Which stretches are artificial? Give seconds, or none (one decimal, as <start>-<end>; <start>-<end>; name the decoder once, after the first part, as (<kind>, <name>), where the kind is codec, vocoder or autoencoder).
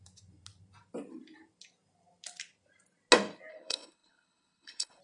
3.5-5.0 (codec, HILCodec)